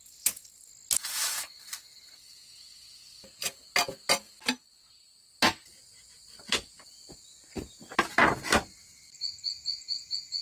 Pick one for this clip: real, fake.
real